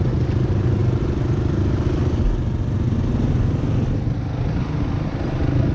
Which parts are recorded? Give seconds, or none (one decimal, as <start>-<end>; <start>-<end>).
0.0-5.7